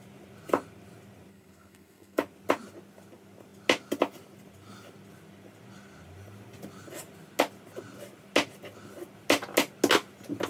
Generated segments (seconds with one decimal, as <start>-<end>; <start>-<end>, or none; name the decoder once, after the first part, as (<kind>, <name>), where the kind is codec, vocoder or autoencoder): 1.3-2.2 (codec, SNAC)